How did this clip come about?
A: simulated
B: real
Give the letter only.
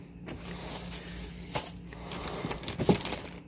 B